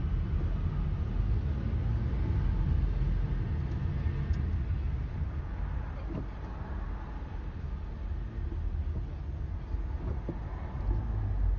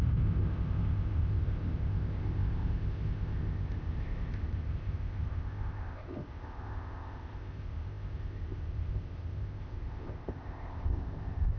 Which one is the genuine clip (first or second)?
first